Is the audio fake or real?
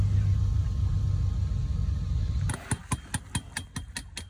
real